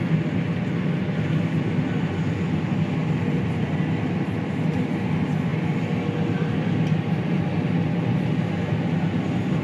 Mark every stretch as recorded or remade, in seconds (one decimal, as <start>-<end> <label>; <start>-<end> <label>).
0.0-9.6 recorded

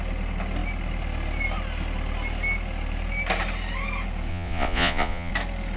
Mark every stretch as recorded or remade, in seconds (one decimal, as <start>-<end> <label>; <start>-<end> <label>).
0.0-4.3 recorded; 4.3-5.3 remade; 5.3-5.8 recorded

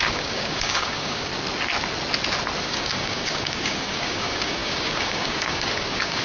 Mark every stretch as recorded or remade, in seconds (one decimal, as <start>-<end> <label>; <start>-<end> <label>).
0.0-1.3 remade; 1.3-2.6 recorded; 2.6-6.2 remade

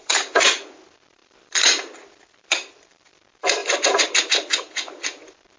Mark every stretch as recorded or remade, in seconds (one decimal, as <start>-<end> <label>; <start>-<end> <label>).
0.0-5.6 remade